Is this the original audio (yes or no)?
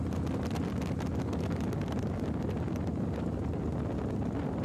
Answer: yes